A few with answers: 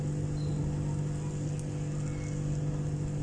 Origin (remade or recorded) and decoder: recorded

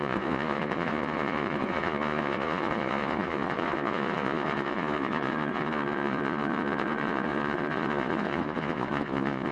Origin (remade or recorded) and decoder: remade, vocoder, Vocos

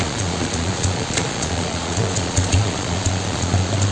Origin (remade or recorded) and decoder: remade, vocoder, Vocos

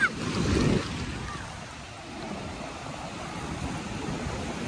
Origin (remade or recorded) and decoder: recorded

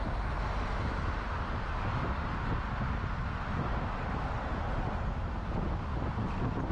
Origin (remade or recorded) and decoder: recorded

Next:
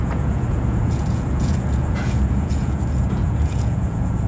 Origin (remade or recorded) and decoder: remade, vocoder, Vocos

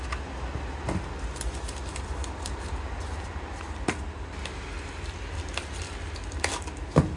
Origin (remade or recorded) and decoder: recorded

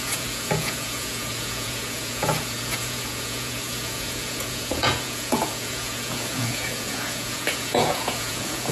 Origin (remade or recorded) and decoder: remade, vocoder, Vocos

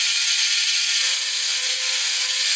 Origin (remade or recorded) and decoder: remade, vocoder, Vocos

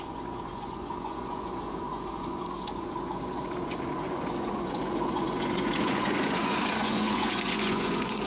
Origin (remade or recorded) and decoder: remade, vocoder, Vocos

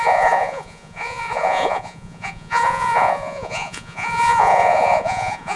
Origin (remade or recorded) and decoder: remade, vocoder, Vocos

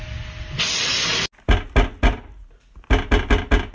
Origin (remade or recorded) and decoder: recorded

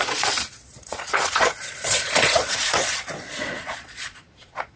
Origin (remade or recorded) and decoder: remade, vocoder, Vocos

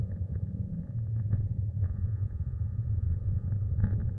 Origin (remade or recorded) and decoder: remade, vocoder, Vocos